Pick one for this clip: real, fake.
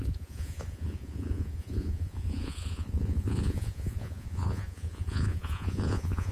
fake